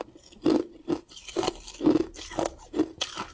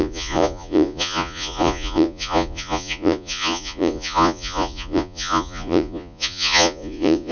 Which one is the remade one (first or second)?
second